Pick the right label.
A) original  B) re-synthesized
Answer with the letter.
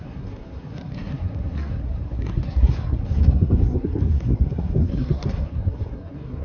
B